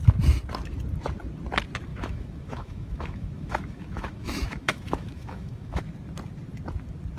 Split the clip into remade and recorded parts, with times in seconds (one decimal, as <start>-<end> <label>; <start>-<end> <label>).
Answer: 0.0-1.9 recorded; 1.9-5.8 remade; 5.8-7.2 recorded